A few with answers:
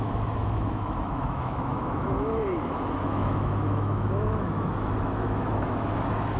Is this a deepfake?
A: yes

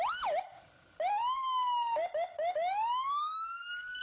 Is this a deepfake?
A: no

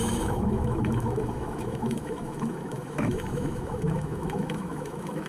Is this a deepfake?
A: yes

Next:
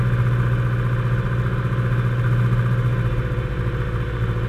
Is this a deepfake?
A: no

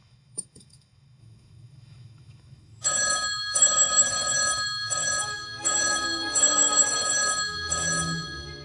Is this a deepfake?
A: yes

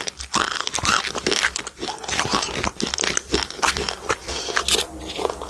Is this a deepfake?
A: no